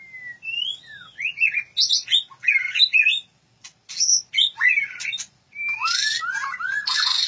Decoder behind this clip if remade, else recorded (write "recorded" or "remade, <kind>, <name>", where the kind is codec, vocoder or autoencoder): recorded